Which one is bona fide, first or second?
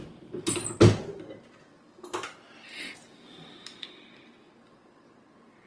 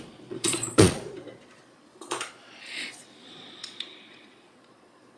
first